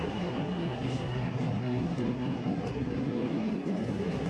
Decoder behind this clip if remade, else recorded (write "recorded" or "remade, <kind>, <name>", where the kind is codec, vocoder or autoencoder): remade, codec, SNAC